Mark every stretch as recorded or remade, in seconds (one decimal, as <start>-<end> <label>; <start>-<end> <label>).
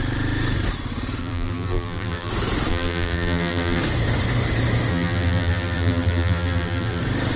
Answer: 0.0-1.2 recorded; 1.2-2.3 remade; 2.3-2.7 recorded; 2.7-3.8 remade; 3.8-4.9 recorded; 4.9-7.0 remade; 7.0-7.4 recorded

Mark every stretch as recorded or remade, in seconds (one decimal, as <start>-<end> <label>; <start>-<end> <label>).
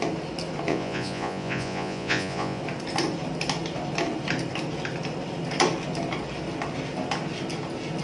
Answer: 0.0-0.7 recorded; 0.7-2.6 remade; 2.6-8.0 recorded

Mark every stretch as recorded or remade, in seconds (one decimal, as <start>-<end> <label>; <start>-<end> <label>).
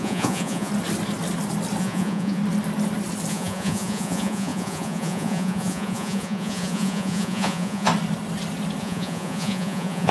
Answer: 0.0-0.7 remade; 0.7-1.8 recorded; 1.8-2.4 remade; 2.4-3.3 recorded; 3.3-7.9 remade; 7.9-8.8 recorded; 8.8-10.1 remade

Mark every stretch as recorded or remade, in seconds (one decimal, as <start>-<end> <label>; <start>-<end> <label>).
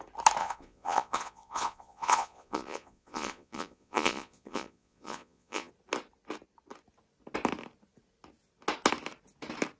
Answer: 0.0-0.4 recorded; 0.4-5.7 remade; 5.7-9.8 recorded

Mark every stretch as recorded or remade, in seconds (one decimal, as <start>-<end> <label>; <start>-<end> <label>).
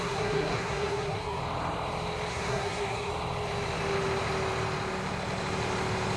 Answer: 0.0-1.4 remade; 1.4-2.3 recorded; 2.3-3.1 remade; 3.1-6.2 recorded